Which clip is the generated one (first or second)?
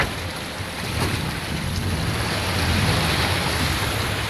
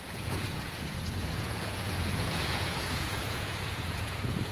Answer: second